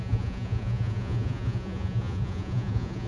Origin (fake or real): fake